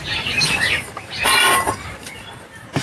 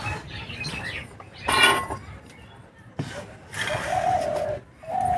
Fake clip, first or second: first